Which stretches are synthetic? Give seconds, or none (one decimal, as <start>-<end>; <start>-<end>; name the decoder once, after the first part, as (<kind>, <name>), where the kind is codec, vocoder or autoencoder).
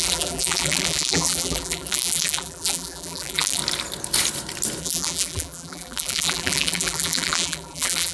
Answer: 0.0-3.6 (vocoder, BigVGAN v2); 4.8-8.1